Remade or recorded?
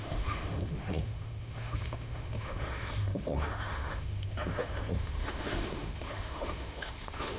remade